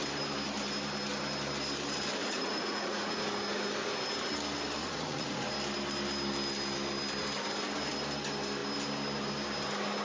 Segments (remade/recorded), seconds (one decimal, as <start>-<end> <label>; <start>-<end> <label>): 0.0-2.2 recorded; 2.2-3.2 remade; 3.2-4.8 recorded; 4.8-5.5 remade; 5.5-10.0 recorded